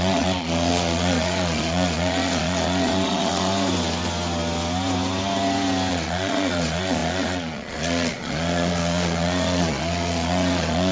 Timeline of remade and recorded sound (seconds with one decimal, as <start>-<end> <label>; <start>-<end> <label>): 0.0-3.5 remade; 3.5-5.9 recorded; 5.9-10.9 remade